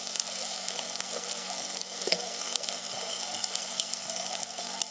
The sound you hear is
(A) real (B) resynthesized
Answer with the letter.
B